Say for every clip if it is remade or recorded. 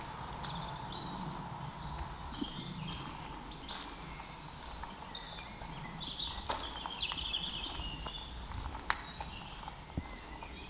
recorded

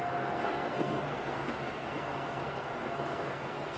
remade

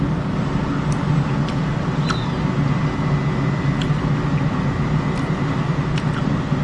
recorded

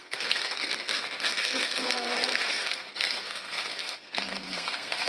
remade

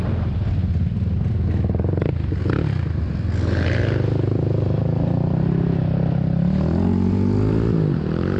recorded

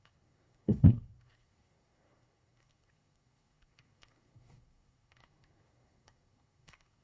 remade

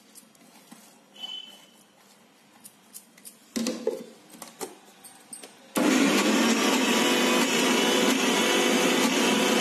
recorded